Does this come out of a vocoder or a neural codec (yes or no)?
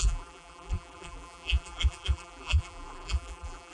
yes